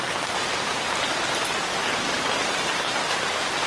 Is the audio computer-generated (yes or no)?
no